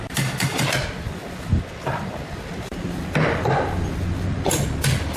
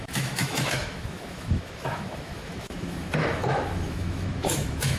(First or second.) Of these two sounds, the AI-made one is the second